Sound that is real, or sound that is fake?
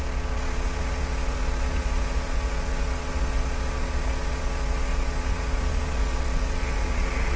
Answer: fake